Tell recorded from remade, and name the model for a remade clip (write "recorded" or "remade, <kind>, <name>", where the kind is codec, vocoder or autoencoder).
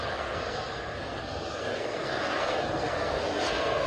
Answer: remade, codec, SNAC